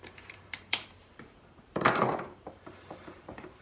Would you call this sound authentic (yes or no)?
no